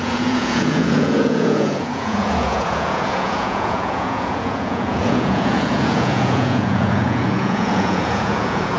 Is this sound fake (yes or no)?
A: yes